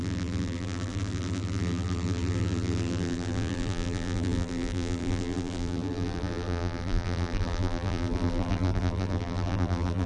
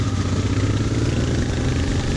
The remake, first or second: first